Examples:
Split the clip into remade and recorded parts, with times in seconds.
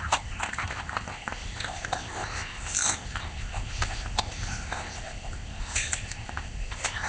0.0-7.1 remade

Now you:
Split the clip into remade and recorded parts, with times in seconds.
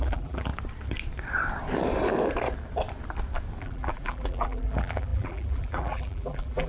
0.0-0.5 remade; 0.5-3.6 recorded; 3.6-6.7 remade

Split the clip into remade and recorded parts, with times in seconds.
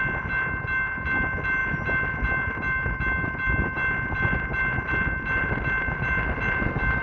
0.0-7.0 recorded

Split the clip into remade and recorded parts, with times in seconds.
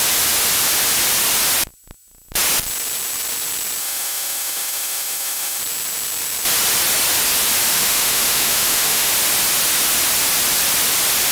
0.0-3.8 recorded; 3.8-5.6 remade; 5.6-7.7 recorded; 7.7-9.1 remade; 9.1-11.3 recorded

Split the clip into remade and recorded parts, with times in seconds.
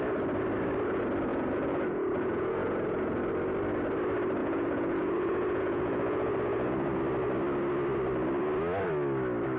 0.0-1.3 recorded; 1.3-3.2 remade; 3.2-4.4 recorded; 4.4-7.0 remade; 7.0-9.6 recorded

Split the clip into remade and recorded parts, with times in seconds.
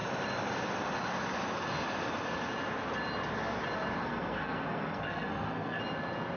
0.0-4.0 recorded; 4.0-5.8 remade; 5.8-6.4 recorded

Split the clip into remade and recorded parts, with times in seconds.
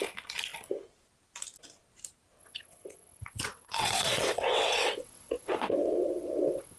0.0-2.4 recorded; 2.4-6.8 remade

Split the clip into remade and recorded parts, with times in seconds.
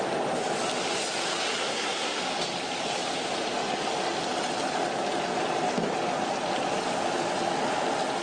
0.0-1.6 recorded; 1.6-2.2 remade; 2.2-8.2 recorded